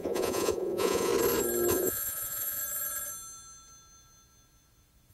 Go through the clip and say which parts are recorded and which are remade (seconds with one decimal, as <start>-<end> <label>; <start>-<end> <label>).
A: 0.0-1.1 remade; 1.1-1.7 recorded; 1.7-2.6 remade; 2.6-5.1 recorded

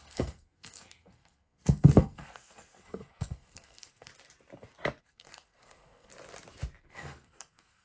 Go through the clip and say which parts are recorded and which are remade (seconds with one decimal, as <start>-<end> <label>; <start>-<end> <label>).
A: 0.0-4.1 remade; 4.1-5.0 recorded; 5.0-6.1 remade; 6.1-6.8 recorded; 6.8-7.8 remade

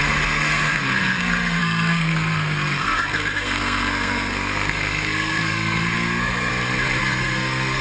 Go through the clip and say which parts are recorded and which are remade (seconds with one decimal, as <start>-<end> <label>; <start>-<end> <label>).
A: 0.0-6.5 remade; 6.5-7.0 recorded; 7.0-7.8 remade

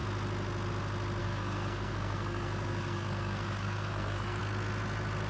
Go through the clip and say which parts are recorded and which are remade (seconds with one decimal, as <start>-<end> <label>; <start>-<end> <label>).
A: 0.0-1.2 recorded; 1.2-4.4 remade; 4.4-5.3 recorded

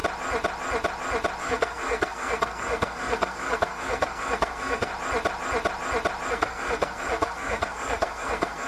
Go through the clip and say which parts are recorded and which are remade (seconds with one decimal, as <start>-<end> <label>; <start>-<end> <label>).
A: 0.0-1.4 recorded; 1.4-4.9 remade; 4.9-6.3 recorded; 6.3-8.7 remade

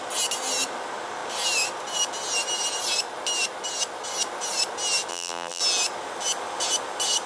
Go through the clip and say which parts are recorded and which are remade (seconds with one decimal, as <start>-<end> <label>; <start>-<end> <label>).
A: 0.0-5.1 recorded; 5.1-5.6 remade; 5.6-7.3 recorded

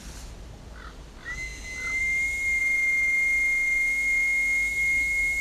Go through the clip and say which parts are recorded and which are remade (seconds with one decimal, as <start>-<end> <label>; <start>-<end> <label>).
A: 0.0-2.6 recorded; 2.6-4.7 remade; 4.7-5.4 recorded